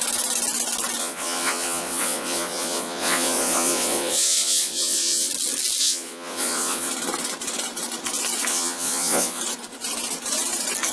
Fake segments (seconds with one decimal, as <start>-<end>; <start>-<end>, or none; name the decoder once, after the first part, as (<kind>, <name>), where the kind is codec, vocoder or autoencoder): 1.0-5.3 (vocoder, Vocos); 5.8-6.9; 8.5-9.4